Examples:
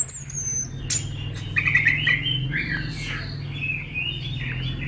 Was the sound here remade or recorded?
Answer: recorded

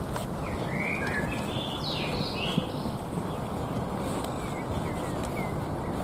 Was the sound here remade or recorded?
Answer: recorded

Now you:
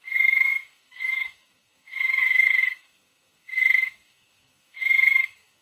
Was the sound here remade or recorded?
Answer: remade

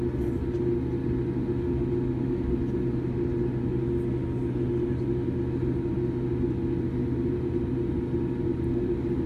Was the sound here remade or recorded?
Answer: recorded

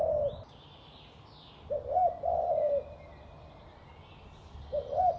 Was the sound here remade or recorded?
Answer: recorded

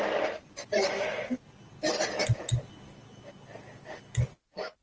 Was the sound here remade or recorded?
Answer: recorded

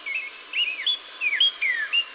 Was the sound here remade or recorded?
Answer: recorded